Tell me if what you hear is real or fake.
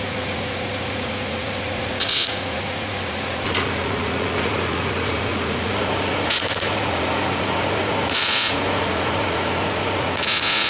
fake